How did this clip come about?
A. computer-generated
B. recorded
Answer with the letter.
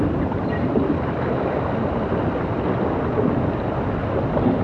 B